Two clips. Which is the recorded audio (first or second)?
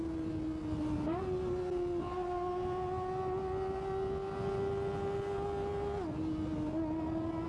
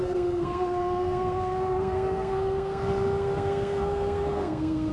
first